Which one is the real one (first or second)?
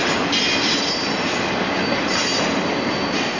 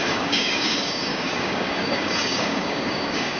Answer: first